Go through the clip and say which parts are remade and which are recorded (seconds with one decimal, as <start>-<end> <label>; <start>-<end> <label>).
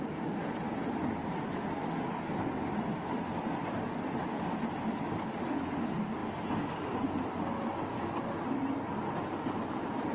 0.0-10.1 recorded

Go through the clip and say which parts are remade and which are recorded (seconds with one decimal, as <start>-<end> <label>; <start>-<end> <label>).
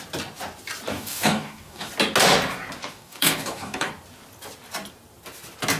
0.0-0.9 recorded; 0.9-1.9 remade; 1.9-2.8 recorded; 2.8-3.9 remade; 3.9-5.8 recorded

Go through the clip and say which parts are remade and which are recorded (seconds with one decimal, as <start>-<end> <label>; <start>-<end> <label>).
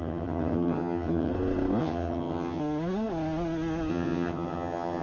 0.0-1.3 remade; 1.3-1.8 recorded; 1.8-2.6 remade; 2.6-3.9 recorded; 3.9-5.0 remade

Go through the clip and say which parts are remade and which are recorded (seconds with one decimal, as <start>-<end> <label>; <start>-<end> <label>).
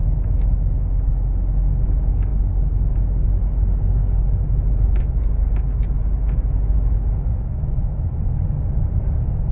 0.0-9.5 recorded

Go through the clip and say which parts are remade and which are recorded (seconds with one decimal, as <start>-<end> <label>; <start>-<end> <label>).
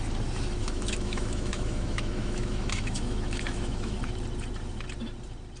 0.0-0.6 recorded; 0.6-4.0 remade; 4.0-5.6 recorded